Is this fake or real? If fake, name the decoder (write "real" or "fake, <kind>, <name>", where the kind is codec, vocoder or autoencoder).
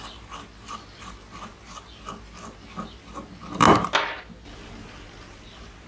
real